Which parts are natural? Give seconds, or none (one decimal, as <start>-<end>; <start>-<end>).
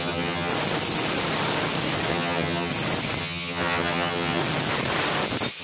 0.5-2.1; 2.7-3.2; 4.4-5.6